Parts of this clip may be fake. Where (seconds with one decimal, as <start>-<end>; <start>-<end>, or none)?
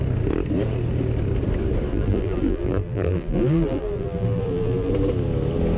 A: 1.9-4.9